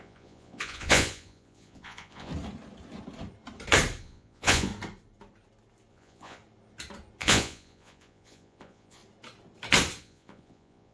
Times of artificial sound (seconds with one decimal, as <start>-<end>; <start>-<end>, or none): 0.0-2.3; 4.0-4.7; 5.9-6.4; 7.2-9.0; 10.0-10.9